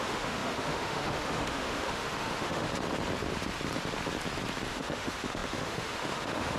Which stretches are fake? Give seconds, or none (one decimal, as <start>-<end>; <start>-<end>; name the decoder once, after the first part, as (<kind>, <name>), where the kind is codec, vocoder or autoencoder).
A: 0.0-2.7 (autoencoder, DAC-VAE); 4.7-6.6